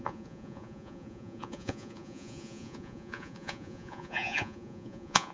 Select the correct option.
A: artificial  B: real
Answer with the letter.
A